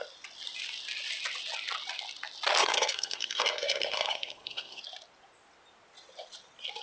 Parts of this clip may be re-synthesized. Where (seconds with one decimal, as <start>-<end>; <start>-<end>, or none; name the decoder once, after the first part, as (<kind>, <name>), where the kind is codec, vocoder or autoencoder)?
2.6-4.8 (codec, SNAC)